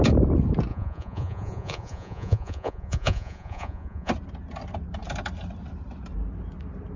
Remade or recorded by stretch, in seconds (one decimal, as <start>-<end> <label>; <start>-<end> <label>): 0.0-0.7 recorded; 0.7-4.1 remade; 4.1-7.0 recorded